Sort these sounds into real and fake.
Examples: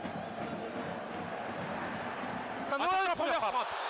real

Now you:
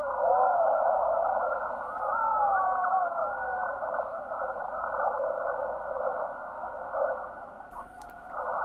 fake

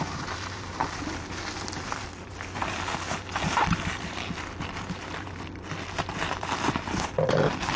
fake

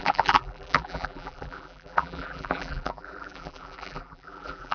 fake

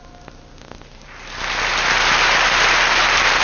real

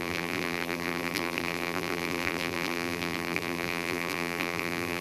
fake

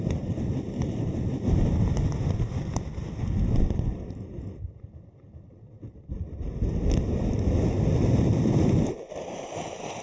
fake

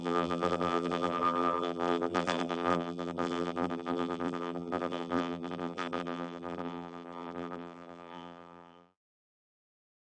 fake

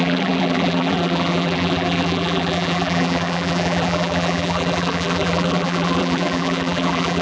fake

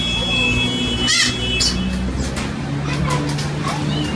real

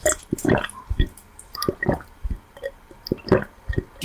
real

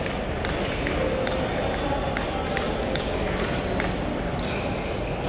real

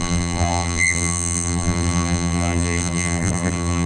fake